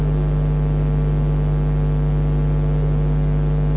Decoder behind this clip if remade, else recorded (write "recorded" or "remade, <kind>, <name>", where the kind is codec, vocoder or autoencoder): recorded